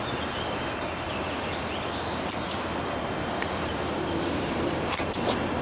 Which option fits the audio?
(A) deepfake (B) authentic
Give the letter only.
A